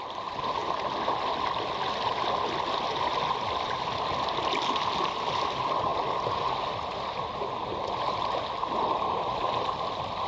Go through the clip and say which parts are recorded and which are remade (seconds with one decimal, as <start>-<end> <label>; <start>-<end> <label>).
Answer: 0.0-10.3 recorded